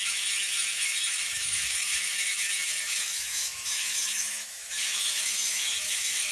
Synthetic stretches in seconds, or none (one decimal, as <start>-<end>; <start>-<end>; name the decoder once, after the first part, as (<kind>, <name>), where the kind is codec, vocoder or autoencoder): 0.0-6.3 (autoencoder, DAC-VAE)

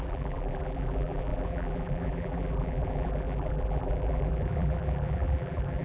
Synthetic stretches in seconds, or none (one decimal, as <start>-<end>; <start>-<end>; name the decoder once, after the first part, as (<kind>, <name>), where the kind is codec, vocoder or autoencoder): 0.0-5.8 (vocoder, BigVGAN v2)

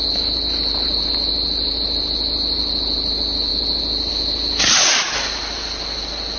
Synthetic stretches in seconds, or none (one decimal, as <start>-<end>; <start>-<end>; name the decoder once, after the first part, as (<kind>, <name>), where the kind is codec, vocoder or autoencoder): none

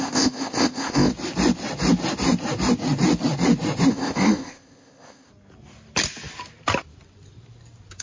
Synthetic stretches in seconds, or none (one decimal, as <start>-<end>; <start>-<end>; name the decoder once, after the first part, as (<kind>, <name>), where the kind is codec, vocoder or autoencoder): 0.0-1.1 (codec, ZipCodec); 3.9-5.3

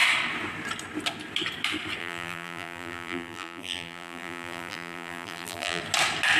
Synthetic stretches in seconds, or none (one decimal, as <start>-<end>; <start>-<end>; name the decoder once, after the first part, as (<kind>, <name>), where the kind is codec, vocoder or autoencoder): 2.0-5.8 (vocoder, BigVGAN v2)

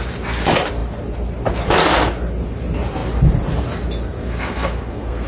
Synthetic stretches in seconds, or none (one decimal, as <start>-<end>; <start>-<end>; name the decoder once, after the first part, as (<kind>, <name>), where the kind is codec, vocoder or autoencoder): 4.1-5.3 (codec, SNAC)